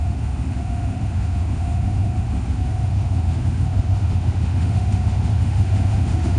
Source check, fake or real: fake